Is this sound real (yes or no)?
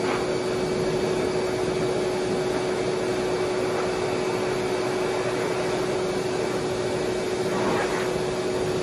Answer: yes